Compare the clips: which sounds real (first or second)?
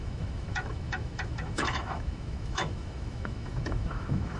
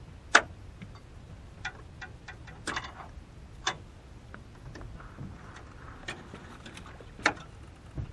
second